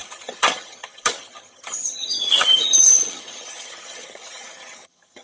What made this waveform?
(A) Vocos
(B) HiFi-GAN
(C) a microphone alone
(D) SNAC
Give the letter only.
B